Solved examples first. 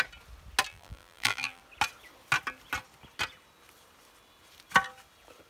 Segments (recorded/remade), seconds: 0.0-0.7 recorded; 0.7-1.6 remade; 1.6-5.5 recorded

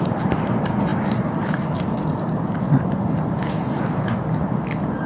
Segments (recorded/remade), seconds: 0.0-0.9 recorded; 0.9-4.0 remade; 4.0-5.1 recorded

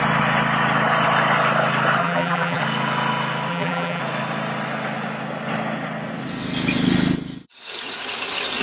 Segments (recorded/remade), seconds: 0.0-2.0 recorded; 2.0-2.6 remade; 2.6-3.5 recorded; 3.5-4.0 remade; 4.0-8.6 recorded

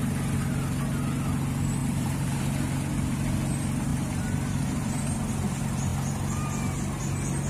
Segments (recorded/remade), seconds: 0.0-1.8 recorded; 1.8-2.4 remade; 2.4-3.9 recorded; 3.9-5.3 remade; 5.3-7.5 recorded

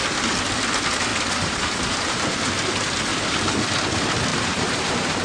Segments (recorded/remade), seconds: 0.0-1.1 recorded; 1.1-2.3 remade; 2.3-3.1 recorded; 3.1-3.6 remade; 3.6-4.3 recorded; 4.3-5.2 remade

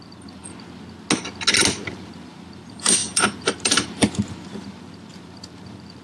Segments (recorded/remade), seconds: 0.0-0.4 remade; 0.4-1.9 recorded; 1.9-6.0 remade

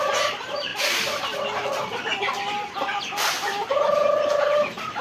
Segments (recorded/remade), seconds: 0.0-0.7 remade; 0.7-3.7 recorded; 3.7-5.0 remade